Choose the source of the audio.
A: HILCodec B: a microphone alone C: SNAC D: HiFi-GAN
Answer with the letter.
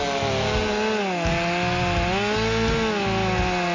B